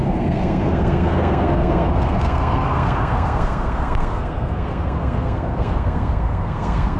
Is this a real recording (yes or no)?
no